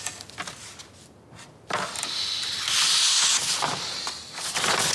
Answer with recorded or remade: recorded